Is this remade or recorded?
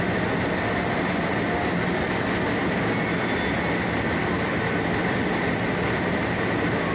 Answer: recorded